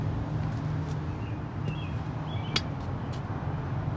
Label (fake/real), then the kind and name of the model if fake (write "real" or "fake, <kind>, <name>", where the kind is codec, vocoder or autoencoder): real